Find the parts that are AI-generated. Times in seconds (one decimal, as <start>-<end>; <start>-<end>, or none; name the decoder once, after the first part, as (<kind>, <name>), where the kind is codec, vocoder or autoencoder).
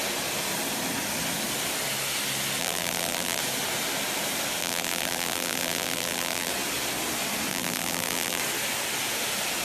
2.6-3.4 (vocoder, BigVGAN v2); 4.6-6.5; 7.5-8.4